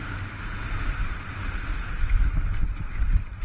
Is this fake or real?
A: real